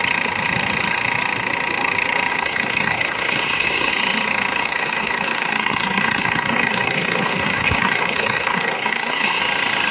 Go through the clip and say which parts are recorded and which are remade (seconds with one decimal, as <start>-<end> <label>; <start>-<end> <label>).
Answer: 0.0-2.3 recorded; 2.3-3.9 remade; 3.9-4.6 recorded; 4.6-9.4 remade; 9.4-9.9 recorded